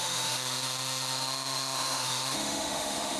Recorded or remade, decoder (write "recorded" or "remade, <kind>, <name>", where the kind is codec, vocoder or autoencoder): remade, autoencoder, DAC-VAE